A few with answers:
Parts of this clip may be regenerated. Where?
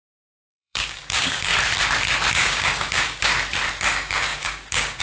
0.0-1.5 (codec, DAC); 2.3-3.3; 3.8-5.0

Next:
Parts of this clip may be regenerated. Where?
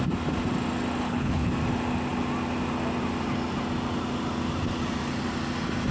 1.0-1.5 (codec, HILCodec)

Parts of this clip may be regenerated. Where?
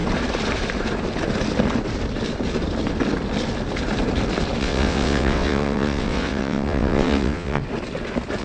4.6-7.6 (vocoder, WaveNeXt)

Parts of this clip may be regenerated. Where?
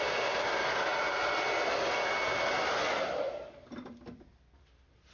none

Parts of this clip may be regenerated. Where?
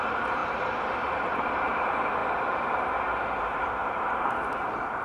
0.0-2.2 (vocoder, BigVGAN v2); 3.2-5.0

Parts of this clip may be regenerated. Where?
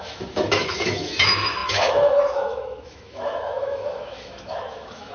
0.0-5.1 (autoencoder, DAC-VAE)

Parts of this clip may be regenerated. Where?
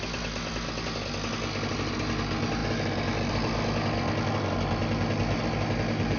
none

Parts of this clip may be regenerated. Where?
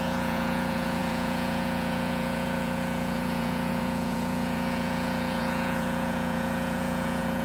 0.0-7.4 (vocoder, Vocos)